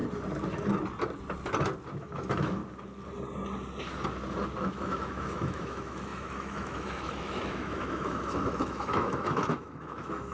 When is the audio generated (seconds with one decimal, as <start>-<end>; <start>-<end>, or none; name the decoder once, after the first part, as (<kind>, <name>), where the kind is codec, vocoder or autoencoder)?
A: 2.0-2.6 (autoencoder, DAC-VAE); 4.6-10.3